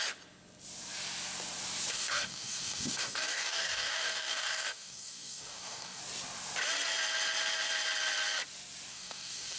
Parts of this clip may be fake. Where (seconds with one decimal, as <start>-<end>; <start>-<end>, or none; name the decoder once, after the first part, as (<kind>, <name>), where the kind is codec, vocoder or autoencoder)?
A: 1.9-6.0 (codec, DAC); 8.9-9.6